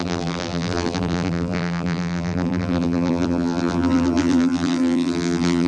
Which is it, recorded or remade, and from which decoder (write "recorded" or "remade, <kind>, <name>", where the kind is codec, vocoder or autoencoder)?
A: remade, vocoder, BigVGAN v2